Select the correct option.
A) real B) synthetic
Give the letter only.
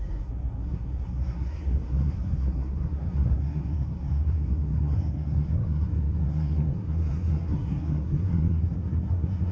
B